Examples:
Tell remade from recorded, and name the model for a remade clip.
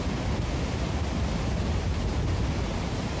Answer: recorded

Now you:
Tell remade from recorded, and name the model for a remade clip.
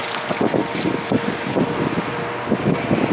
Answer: recorded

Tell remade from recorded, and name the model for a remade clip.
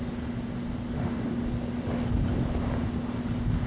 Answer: recorded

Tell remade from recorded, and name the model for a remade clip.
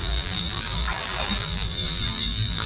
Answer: remade, vocoder, BigVGAN v2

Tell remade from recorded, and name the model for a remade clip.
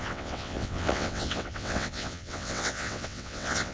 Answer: remade, vocoder, WaveNeXt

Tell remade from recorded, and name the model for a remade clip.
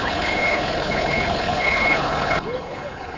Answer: remade, codec, HILCodec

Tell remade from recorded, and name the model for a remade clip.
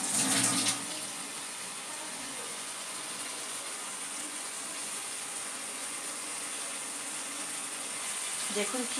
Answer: remade, vocoder, Vocos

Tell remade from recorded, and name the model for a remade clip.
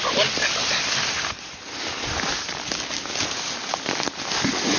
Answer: recorded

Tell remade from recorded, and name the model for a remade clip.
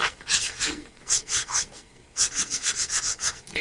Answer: remade, codec, SNAC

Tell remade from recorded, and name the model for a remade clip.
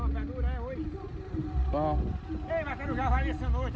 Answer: recorded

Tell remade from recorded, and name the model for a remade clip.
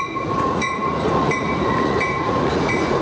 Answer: remade, vocoder, Vocos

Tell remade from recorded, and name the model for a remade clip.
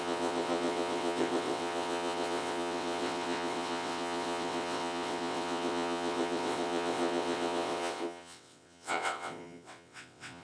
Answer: remade, vocoder, WaveNeXt